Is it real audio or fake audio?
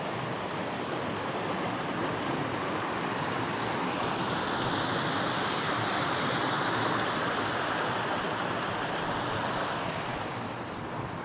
real